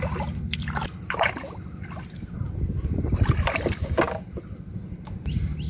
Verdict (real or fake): real